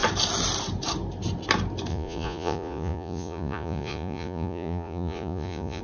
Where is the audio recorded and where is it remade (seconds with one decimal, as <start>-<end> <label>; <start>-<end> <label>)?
0.0-1.9 recorded; 1.9-5.8 remade